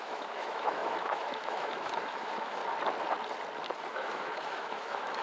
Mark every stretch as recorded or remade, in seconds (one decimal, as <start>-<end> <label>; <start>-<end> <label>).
0.0-2.6 remade; 2.6-3.9 recorded; 3.9-5.2 remade